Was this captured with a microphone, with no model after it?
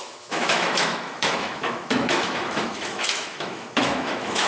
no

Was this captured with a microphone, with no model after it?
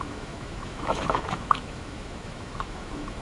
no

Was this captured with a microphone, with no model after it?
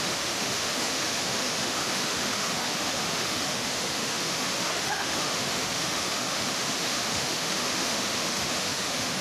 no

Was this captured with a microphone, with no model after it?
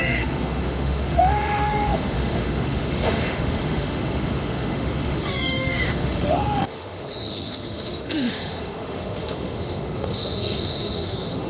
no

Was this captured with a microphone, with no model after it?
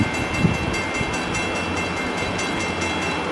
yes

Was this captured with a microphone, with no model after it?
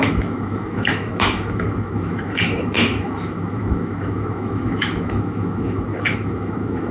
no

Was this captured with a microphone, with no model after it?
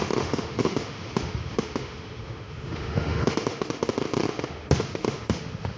no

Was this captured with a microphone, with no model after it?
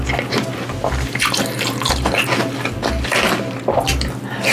yes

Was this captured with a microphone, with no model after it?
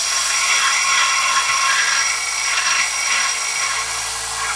yes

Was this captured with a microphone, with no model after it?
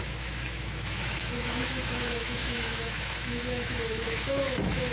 no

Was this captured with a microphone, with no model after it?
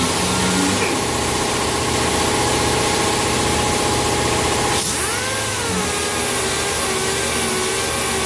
yes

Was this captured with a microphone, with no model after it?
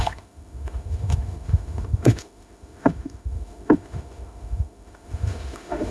no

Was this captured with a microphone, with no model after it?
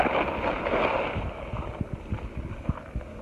yes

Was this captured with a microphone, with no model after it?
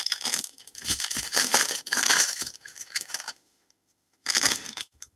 no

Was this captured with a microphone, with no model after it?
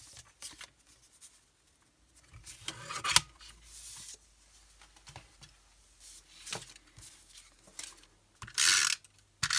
yes